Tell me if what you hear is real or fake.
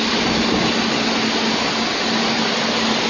real